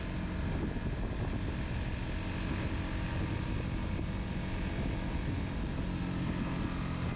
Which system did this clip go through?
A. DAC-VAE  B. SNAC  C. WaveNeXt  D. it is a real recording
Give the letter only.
D